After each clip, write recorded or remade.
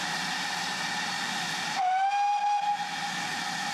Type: recorded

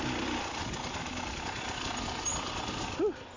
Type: recorded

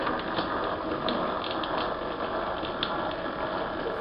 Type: recorded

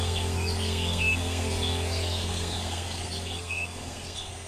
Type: remade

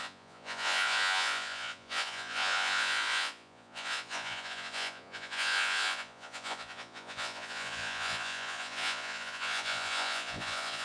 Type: remade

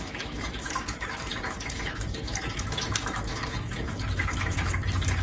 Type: remade